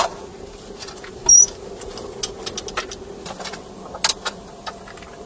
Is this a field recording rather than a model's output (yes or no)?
yes